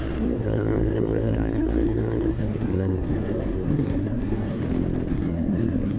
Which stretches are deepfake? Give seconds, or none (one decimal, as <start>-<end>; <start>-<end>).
0.0-4.6; 5.1-6.0